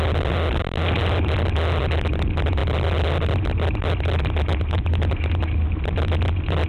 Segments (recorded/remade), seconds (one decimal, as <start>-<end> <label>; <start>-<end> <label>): 0.0-6.7 recorded